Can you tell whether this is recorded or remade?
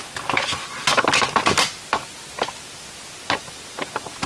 recorded